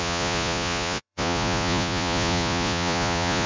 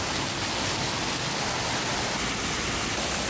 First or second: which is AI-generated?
first